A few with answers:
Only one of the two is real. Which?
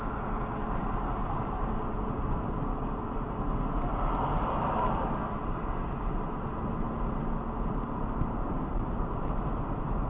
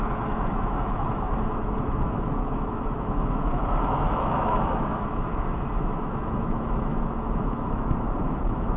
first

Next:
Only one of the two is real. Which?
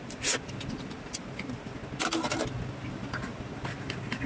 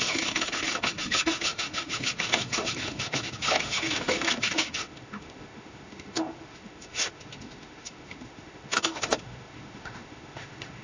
first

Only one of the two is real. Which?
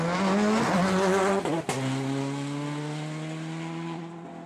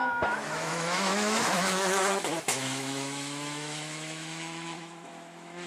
first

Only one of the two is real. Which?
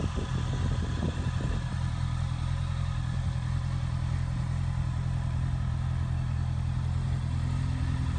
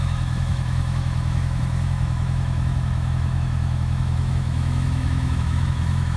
first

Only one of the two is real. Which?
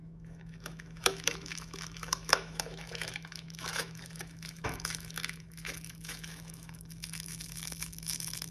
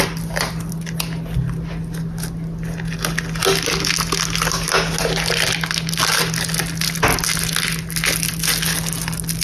second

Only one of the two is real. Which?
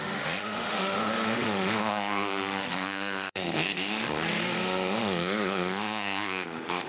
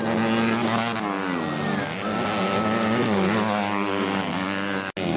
second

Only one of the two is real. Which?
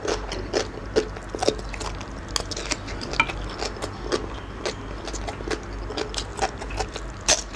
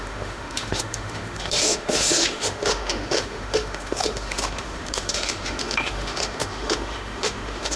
first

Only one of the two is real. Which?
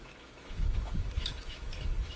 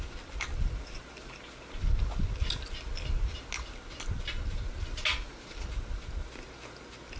second